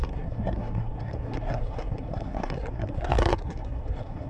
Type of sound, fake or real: fake